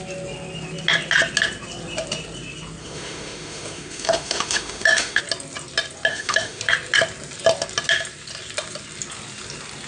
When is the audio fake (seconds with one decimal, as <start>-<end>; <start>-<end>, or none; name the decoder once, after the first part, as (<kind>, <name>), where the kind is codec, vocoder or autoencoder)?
2.8-5.2 (autoencoder, DAC-VAE); 6.1-6.6